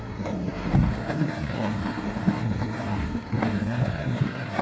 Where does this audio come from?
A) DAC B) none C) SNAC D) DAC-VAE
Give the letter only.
C